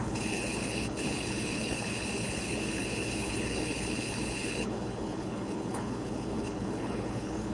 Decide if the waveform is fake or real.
fake